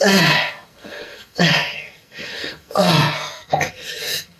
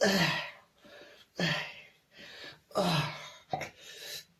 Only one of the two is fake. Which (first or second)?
first